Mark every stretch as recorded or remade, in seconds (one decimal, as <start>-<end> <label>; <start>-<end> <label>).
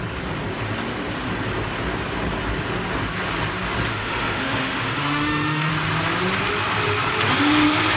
0.0-3.9 recorded; 3.9-5.7 remade; 5.7-8.0 recorded